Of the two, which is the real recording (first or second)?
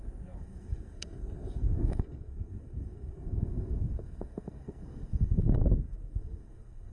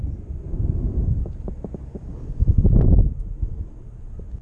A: second